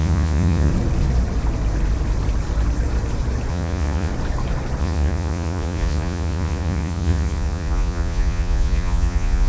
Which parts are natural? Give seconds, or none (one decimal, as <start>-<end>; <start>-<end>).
0.7-3.5; 4.1-4.8